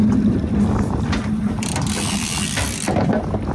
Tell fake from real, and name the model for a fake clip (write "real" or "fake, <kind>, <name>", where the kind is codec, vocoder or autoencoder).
real